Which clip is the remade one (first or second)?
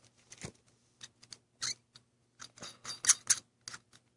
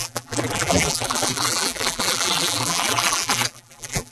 second